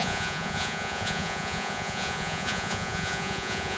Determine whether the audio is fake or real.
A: fake